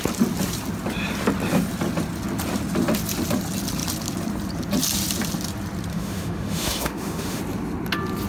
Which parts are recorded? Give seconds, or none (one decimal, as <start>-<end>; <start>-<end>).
0.0-5.9; 7.4-8.3